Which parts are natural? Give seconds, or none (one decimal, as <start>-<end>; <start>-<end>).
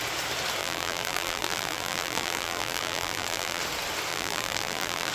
0.0-0.6; 3.6-4.1